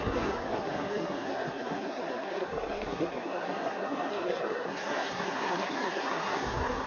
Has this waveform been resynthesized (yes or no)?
yes